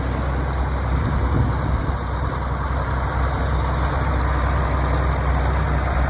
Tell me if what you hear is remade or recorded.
recorded